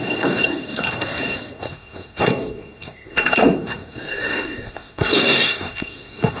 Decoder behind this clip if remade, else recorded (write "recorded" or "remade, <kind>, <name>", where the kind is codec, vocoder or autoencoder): remade, codec, SNAC